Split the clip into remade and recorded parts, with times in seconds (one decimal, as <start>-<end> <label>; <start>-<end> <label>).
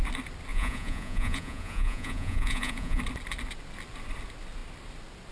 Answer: 0.0-0.5 recorded; 0.5-3.0 remade; 3.0-5.3 recorded